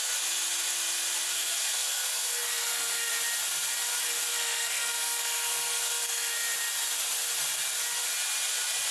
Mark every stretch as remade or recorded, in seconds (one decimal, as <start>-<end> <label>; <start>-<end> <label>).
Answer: 0.0-1.3 recorded; 1.3-3.1 remade; 3.1-4.3 recorded; 4.3-6.3 remade; 6.3-8.9 recorded